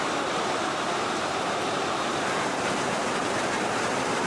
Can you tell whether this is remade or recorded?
remade